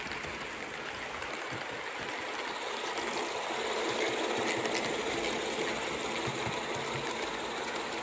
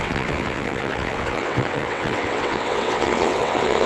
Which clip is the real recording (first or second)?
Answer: first